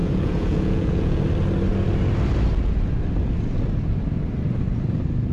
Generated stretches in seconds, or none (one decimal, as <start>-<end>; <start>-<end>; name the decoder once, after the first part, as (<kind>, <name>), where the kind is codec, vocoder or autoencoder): 0.0-1.2 (vocoder, Vocos)